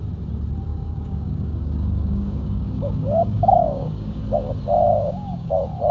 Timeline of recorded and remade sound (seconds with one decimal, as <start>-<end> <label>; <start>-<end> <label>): 0.0-0.7 recorded; 0.7-4.2 remade; 4.2-4.8 recorded; 4.8-5.5 remade; 5.5-5.9 recorded